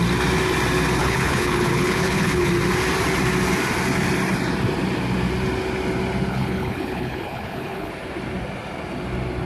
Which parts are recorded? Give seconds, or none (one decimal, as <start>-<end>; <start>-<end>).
0.0-1.0; 2.5-6.3; 7.9-9.5